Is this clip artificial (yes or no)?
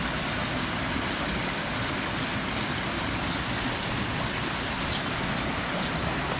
no